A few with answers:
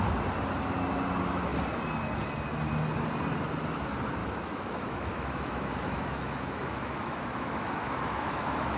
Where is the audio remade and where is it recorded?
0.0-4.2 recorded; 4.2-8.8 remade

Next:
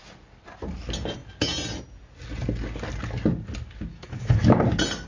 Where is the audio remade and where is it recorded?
0.0-3.9 recorded; 3.9-4.4 remade; 4.4-5.1 recorded

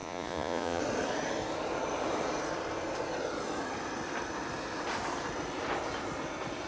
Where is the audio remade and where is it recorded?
0.0-0.8 remade; 0.8-6.7 recorded

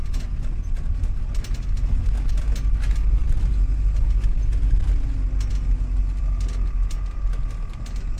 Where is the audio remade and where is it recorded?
0.0-8.2 recorded

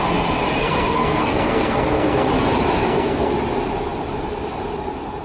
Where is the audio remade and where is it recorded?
0.0-0.6 recorded; 0.6-2.3 remade; 2.3-2.8 recorded; 2.8-3.3 remade; 3.3-5.2 recorded

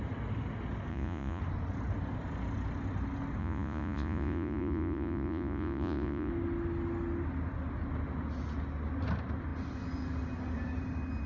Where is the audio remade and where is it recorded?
0.0-0.9 recorded; 0.9-1.4 remade; 1.4-3.4 recorded; 3.4-6.3 remade; 6.3-11.3 recorded

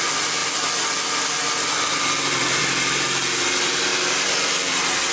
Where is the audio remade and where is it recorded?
0.0-5.1 remade